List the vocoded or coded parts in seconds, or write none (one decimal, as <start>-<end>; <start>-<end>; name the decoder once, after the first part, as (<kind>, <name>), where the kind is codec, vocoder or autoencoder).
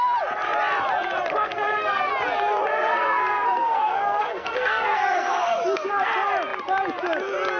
1.3-2.1 (codec, SNAC); 2.7-6.1